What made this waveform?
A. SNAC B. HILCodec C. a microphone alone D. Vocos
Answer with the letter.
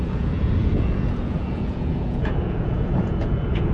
D